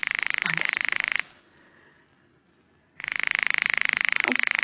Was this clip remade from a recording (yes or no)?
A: no